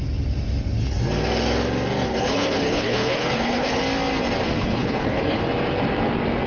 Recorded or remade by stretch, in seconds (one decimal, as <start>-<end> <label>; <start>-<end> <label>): 0.0-2.1 recorded; 2.1-3.8 remade; 3.8-4.6 recorded; 4.6-5.4 remade; 5.4-6.5 recorded